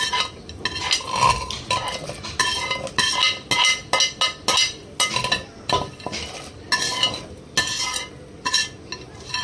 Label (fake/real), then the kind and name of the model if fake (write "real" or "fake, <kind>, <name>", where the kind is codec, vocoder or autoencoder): real